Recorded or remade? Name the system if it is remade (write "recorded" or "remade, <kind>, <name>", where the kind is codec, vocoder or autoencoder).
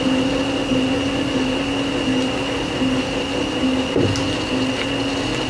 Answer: recorded